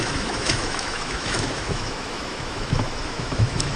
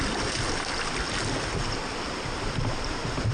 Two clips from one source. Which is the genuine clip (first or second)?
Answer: second